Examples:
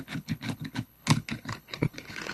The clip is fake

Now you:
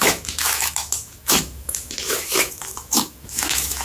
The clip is fake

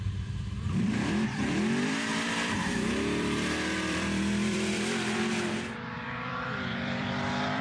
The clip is fake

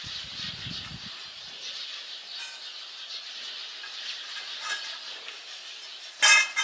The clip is real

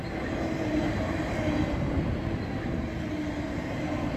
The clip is real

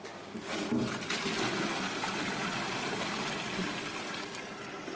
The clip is real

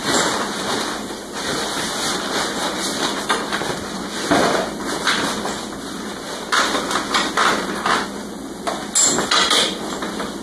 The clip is real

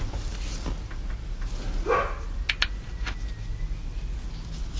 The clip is real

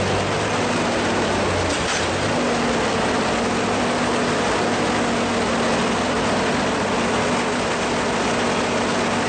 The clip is real